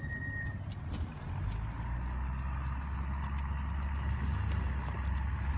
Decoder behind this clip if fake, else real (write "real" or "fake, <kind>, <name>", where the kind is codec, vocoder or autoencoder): real